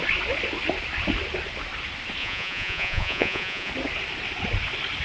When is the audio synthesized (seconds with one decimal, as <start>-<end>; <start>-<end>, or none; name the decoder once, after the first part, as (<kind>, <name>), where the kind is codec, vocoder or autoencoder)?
2.2-3.7 (vocoder, Vocos)